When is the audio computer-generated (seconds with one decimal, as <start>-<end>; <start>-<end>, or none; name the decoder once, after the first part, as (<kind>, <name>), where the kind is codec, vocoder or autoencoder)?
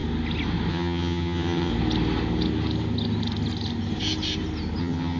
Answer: 0.7-1.7 (vocoder, HiFi-GAN); 4.8-5.2